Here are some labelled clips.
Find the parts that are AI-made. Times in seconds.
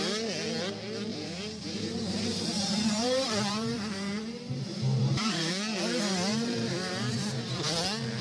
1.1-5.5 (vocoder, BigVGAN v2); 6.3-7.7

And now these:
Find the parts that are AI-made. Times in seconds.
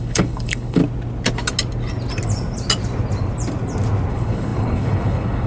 0.0-0.8 (codec, HILCodec); 4.1-5.5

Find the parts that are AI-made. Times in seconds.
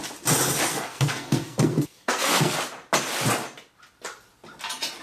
0.7-2.5 (codec, SNAC)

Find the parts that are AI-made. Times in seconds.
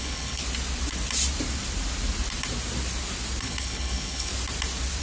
0.0-0.4 (codec, HILCodec); 3.4-4.3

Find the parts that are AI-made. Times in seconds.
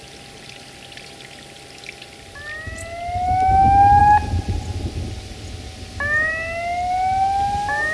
none